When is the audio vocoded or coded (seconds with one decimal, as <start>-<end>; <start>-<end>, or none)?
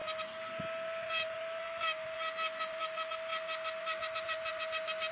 none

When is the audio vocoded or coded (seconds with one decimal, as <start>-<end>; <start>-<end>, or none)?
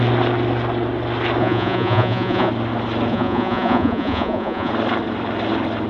1.4-2.5; 3.1-4.7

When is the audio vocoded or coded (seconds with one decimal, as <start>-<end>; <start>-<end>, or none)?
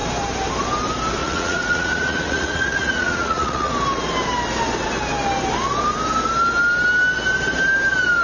1.2-3.7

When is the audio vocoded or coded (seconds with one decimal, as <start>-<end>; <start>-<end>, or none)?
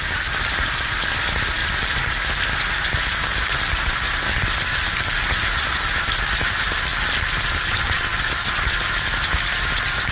none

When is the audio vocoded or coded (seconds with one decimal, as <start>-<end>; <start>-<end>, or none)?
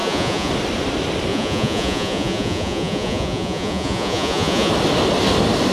0.0-0.5; 1.3-4.7